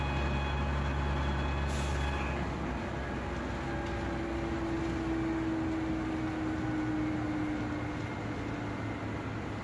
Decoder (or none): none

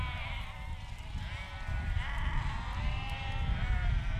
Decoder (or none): none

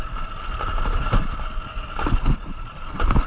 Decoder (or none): none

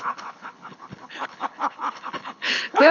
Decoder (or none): codec, HILCodec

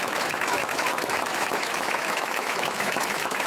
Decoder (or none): autoencoder, DAC-VAE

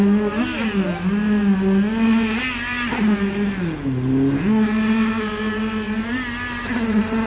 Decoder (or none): none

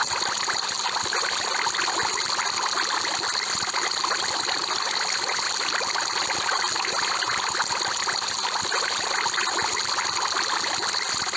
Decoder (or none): none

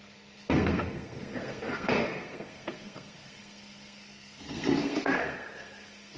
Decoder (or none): codec, SNAC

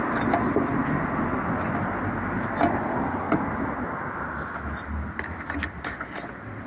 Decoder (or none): none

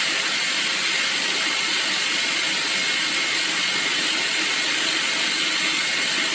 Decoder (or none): none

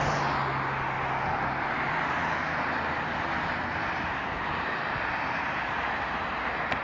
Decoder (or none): none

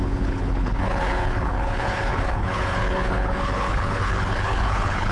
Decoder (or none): codec, HILCodec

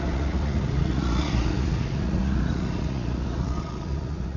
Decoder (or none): vocoder, Vocos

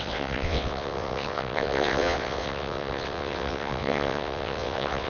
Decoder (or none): vocoder, WaveNeXt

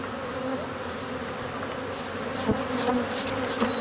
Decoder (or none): none